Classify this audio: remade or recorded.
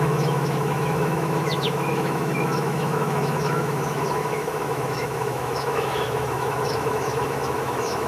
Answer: remade